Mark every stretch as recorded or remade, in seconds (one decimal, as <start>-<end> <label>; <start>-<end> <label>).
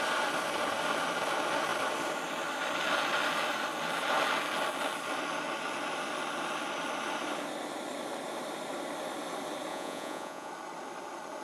0.0-9.7 recorded; 9.7-10.5 remade; 10.5-11.4 recorded